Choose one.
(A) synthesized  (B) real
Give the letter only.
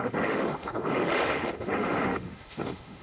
A